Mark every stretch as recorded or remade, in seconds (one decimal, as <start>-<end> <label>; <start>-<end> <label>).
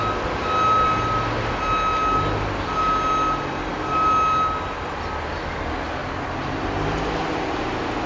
0.0-8.1 recorded